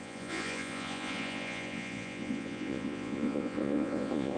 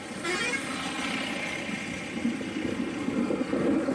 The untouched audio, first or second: second